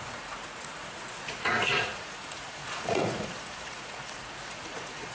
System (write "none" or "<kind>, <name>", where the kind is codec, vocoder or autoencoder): vocoder, Vocos